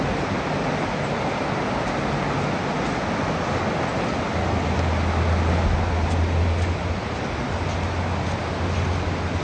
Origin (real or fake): real